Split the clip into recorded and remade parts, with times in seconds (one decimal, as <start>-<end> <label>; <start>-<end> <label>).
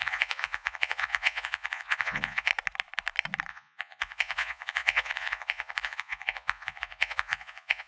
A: 0.0-2.5 remade; 2.5-3.5 recorded; 3.5-7.9 remade